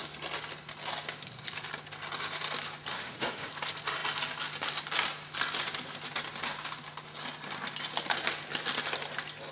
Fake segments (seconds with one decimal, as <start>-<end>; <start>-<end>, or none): 2.9-3.5